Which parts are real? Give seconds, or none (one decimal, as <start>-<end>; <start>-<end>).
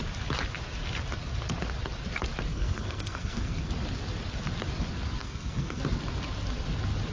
0.0-2.5; 3.7-5.2; 5.8-7.1